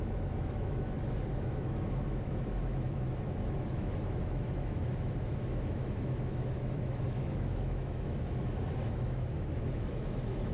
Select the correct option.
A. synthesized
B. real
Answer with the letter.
A